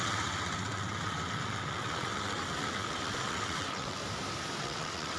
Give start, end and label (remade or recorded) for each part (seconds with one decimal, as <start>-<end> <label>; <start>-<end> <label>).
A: 0.0-4.0 remade; 4.0-4.6 recorded; 4.6-5.2 remade